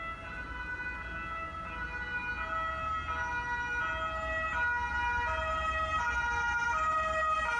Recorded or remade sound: recorded